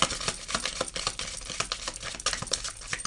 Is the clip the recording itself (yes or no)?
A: yes